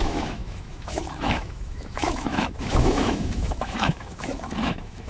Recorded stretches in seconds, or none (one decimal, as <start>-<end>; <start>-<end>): none